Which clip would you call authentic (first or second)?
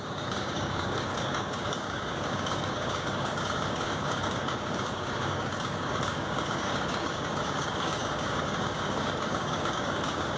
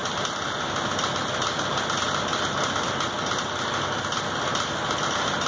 second